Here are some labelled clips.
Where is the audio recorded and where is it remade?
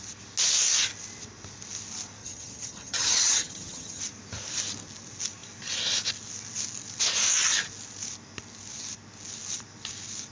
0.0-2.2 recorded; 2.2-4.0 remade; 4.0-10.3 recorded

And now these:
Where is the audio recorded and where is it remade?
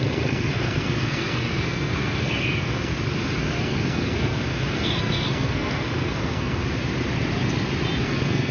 0.0-2.9 remade; 2.9-3.6 recorded; 3.6-6.6 remade; 6.6-8.0 recorded; 8.0-8.5 remade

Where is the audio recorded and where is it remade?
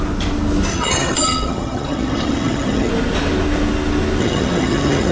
0.0-0.7 recorded; 0.7-2.9 remade; 2.9-4.2 recorded; 4.2-5.1 remade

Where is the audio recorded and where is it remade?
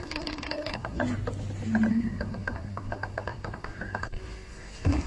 0.0-1.0 remade; 1.0-1.9 recorded; 1.9-5.1 remade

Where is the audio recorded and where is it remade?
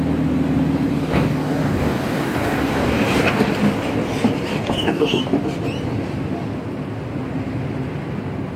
0.0-0.9 recorded; 0.9-3.5 remade; 3.5-4.5 recorded; 4.5-5.2 remade; 5.2-8.6 recorded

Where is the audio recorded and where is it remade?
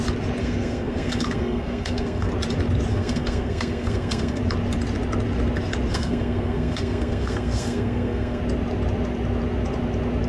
0.0-0.4 recorded; 0.4-2.3 remade; 2.3-2.9 recorded; 2.9-4.4 remade; 4.4-5.9 recorded; 5.9-8.4 remade; 8.4-10.3 recorded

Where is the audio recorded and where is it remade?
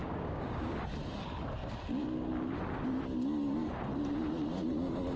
0.0-0.7 remade; 0.7-5.2 recorded